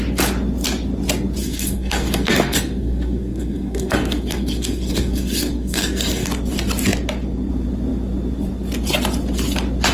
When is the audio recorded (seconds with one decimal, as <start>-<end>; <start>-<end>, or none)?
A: 0.0-1.4; 6.3-9.9